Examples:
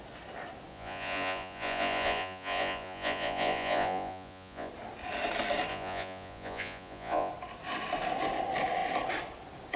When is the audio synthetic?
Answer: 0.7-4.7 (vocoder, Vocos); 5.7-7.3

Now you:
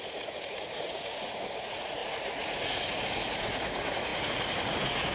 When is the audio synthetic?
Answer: 0.0-5.1 (vocoder, Vocos)

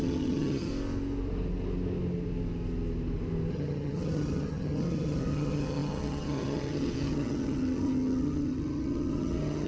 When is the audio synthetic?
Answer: 0.0-0.7 (vocoder, HiFi-GAN); 3.5-9.7

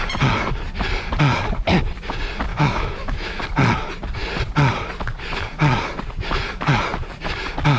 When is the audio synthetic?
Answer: 2.5-3.4 (autoencoder, DAC-VAE)

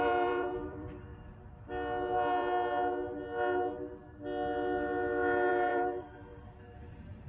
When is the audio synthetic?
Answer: 0.0-1.1 (vocoder, BigVGAN v2); 5.5-6.3

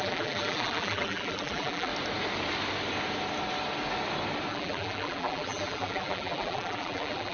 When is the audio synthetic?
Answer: 0.0-1.9 (vocoder, BigVGAN v2); 4.5-7.3

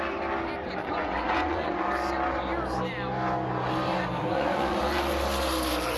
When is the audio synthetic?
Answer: 0.8-1.8 (vocoder, Vocos); 4.2-4.8